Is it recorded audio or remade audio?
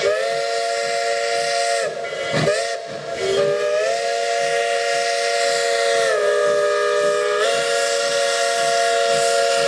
recorded